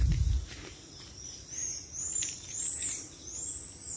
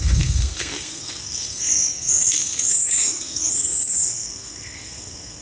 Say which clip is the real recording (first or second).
first